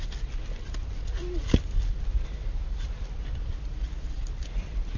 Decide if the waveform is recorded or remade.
recorded